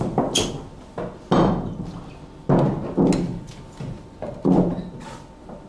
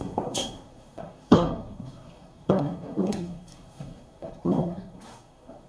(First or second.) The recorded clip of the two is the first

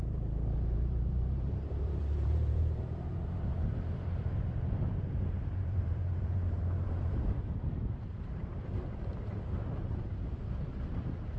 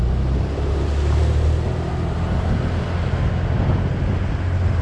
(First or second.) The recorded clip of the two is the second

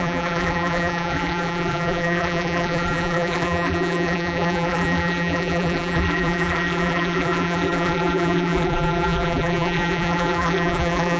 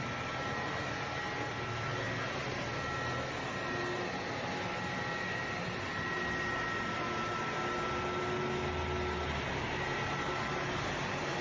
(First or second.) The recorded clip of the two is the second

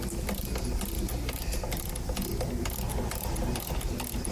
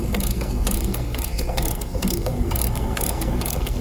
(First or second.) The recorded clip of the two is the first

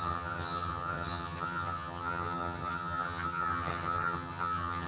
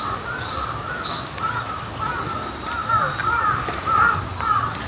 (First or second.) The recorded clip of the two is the second